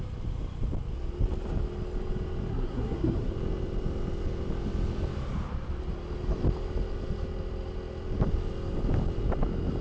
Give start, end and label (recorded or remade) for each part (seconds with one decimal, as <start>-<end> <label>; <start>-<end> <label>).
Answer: 0.0-2.5 recorded; 2.5-3.3 remade; 3.3-9.8 recorded